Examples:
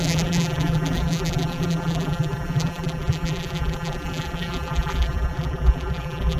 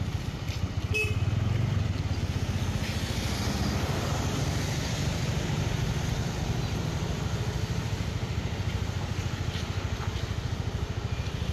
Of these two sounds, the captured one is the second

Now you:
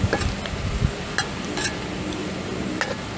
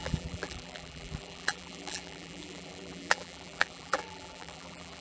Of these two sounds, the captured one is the first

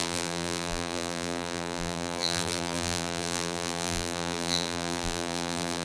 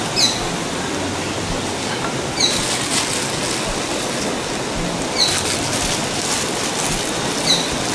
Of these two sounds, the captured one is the second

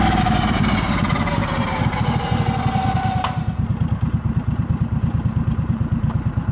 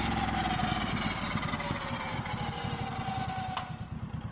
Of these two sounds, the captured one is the second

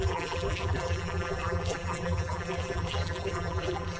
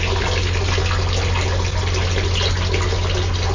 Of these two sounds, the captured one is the second